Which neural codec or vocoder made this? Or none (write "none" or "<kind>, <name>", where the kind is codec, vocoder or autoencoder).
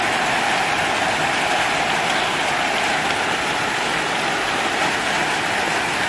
none